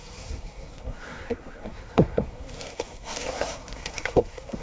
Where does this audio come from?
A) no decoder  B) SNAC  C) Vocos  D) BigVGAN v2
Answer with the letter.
B